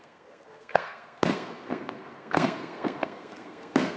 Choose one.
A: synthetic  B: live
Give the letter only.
A